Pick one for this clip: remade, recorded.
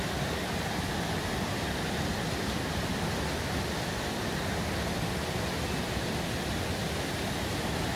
recorded